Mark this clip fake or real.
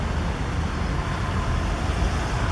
real